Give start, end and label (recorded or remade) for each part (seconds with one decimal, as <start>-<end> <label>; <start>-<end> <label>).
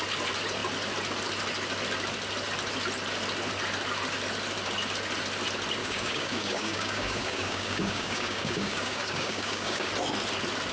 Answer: 0.0-5.8 recorded; 5.8-9.9 remade; 9.9-10.7 recorded